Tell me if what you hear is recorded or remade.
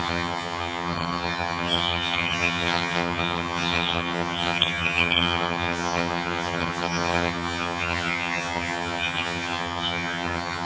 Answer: remade